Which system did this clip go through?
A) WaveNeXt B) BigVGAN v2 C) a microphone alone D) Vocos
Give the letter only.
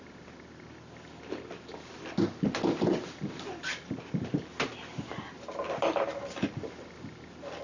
C